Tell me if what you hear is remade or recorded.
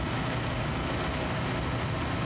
recorded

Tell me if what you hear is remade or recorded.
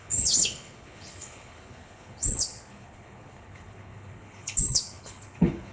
remade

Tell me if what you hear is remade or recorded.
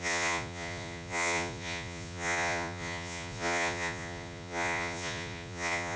remade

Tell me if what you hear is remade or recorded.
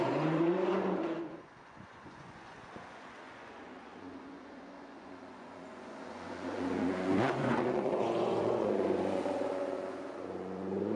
remade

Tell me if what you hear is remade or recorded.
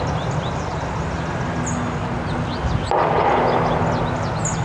recorded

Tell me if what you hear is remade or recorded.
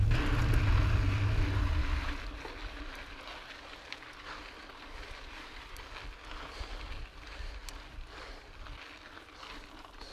recorded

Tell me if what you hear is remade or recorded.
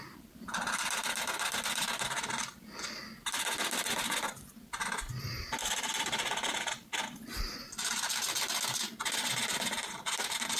recorded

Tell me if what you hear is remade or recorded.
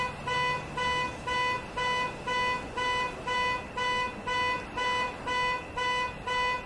recorded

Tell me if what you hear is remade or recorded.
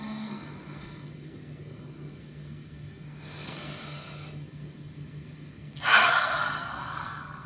remade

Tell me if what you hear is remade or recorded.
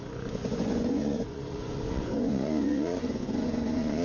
remade